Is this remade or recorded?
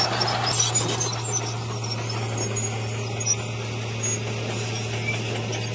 recorded